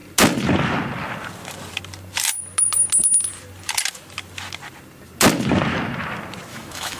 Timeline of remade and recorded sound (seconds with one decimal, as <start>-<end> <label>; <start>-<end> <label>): 0.0-6.5 recorded; 6.5-7.0 remade